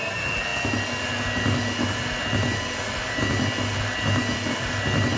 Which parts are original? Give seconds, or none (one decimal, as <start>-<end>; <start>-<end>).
0.0-5.2